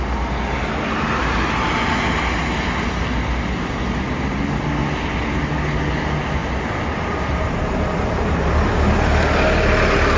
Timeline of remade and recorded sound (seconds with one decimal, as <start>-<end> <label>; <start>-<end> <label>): 0.0-10.2 recorded